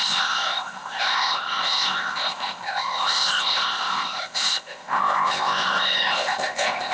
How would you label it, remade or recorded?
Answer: remade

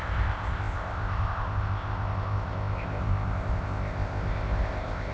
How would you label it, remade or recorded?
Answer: remade